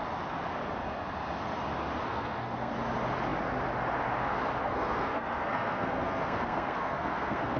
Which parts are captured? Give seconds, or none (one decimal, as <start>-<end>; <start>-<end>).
0.0-2.1; 2.7-4.6

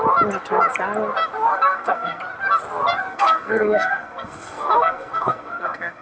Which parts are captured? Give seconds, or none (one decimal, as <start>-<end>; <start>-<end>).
0.0-1.5; 2.2-3.1

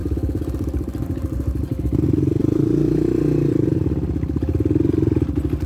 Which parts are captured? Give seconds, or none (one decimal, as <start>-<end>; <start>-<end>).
0.0-5.7

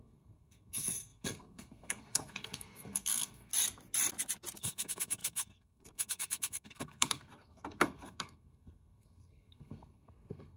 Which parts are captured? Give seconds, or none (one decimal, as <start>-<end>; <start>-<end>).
3.5-4.6

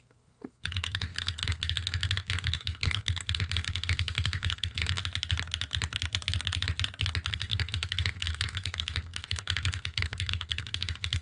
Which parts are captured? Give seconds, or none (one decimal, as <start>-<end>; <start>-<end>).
5.0-7.3

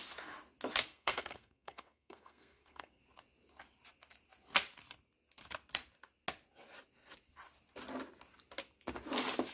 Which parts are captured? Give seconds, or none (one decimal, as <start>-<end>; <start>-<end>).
0.0-0.9; 3.0-9.5

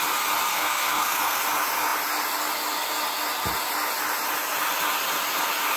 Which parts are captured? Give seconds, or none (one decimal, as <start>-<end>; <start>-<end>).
0.0-0.5; 1.4-5.8